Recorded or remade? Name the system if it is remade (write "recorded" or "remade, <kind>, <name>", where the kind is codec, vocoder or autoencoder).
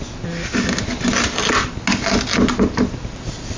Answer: recorded